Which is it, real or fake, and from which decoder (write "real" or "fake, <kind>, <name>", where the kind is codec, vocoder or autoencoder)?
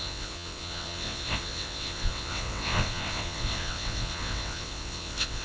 fake, vocoder, WaveNeXt